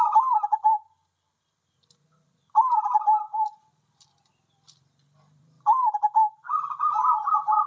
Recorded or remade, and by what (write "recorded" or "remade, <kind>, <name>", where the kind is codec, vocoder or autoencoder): remade, vocoder, BigVGAN v2